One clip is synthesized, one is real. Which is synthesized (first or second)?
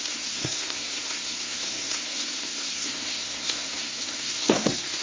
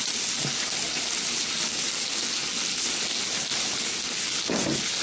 first